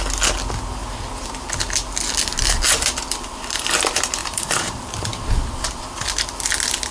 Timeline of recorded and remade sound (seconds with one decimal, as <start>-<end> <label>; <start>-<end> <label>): 0.0-4.2 recorded; 4.2-5.1 remade; 5.1-6.9 recorded

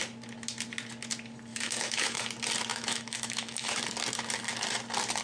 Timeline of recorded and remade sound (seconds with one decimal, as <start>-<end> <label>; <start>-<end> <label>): 0.0-1.5 recorded; 1.5-2.2 remade; 2.2-2.7 recorded; 2.7-3.8 remade; 3.8-5.2 recorded

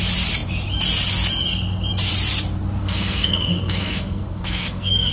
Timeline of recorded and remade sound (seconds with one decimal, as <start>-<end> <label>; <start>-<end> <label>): 0.0-2.8 recorded; 2.8-5.1 remade

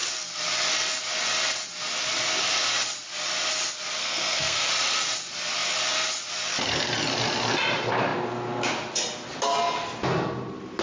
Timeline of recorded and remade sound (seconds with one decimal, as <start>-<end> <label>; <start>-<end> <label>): 0.0-4.0 recorded; 4.0-4.7 remade; 4.7-10.8 recorded

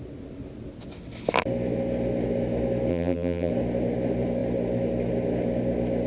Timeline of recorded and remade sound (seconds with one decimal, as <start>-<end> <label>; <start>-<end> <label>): 0.0-2.9 recorded; 2.9-3.5 remade; 3.5-6.1 recorded

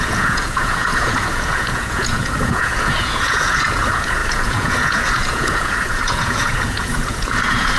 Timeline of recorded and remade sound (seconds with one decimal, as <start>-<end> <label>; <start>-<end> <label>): 0.0-7.8 remade

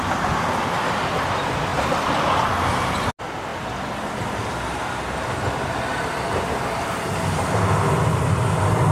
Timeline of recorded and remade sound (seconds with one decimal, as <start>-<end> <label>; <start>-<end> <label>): 0.0-8.9 recorded

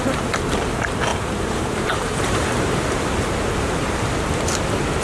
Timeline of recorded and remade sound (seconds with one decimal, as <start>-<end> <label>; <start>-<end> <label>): 0.0-1.1 recorded; 1.1-4.1 remade; 4.1-5.0 recorded